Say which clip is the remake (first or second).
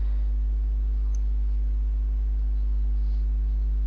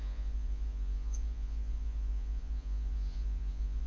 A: second